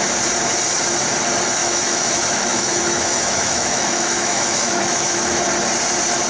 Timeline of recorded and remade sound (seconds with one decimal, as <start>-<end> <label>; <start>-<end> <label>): 0.0-1.6 recorded; 1.6-5.4 remade; 5.4-6.3 recorded